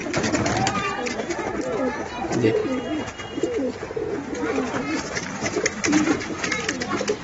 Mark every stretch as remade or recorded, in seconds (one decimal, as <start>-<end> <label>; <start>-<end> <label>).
0.0-4.8 recorded; 4.8-7.2 remade